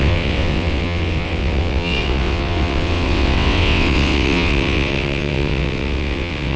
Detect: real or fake fake